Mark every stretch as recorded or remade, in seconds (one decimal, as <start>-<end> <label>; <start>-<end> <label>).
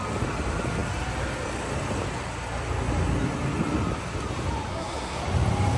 0.0-4.7 recorded; 4.7-5.2 remade; 5.2-5.8 recorded